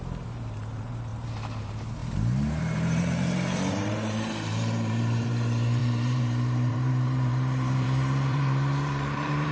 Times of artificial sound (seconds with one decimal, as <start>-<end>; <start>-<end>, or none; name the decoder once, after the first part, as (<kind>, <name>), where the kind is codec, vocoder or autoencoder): 0.0-1.1 (vocoder, BigVGAN v2); 1.6-2.0; 2.6-9.5